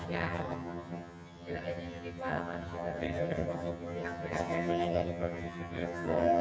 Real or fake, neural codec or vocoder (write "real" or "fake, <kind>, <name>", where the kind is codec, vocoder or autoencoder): fake, vocoder, HiFi-GAN